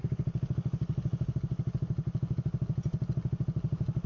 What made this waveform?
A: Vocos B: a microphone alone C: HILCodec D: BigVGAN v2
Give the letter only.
B